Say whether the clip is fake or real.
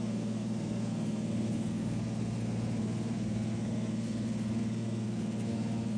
fake